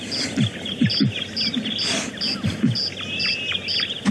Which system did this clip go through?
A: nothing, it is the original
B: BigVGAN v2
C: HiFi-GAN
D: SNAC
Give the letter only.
A